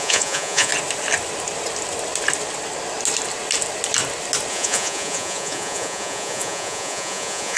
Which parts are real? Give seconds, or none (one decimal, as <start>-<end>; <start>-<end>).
0.7-4.5